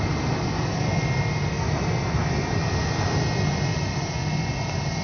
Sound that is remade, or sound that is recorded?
recorded